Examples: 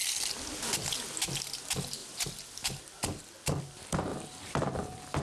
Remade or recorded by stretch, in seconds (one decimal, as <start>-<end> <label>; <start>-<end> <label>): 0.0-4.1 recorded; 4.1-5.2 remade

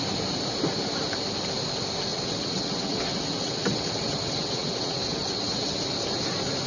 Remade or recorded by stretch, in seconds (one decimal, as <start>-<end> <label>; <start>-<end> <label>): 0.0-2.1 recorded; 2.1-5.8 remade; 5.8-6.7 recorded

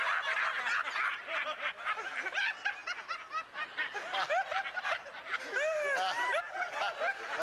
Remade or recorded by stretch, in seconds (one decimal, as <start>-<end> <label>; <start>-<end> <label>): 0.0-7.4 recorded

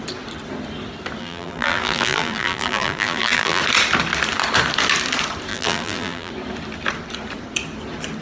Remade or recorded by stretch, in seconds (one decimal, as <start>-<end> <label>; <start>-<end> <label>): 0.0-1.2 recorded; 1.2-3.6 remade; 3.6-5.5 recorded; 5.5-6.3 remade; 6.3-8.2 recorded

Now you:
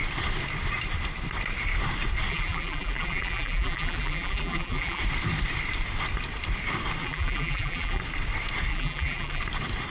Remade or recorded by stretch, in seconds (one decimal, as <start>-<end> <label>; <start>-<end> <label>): 0.0-2.3 recorded; 2.3-5.0 remade; 5.0-7.0 recorded; 7.0-8.0 remade; 8.0-8.7 recorded; 8.7-9.4 remade; 9.4-9.9 recorded